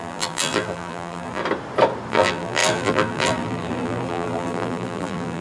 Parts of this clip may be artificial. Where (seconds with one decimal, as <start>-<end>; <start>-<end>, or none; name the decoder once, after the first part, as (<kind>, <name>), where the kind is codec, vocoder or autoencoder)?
0.0-1.4 (vocoder, BigVGAN v2); 2.1-5.4